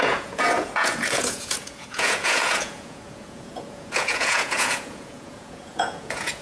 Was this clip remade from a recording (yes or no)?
yes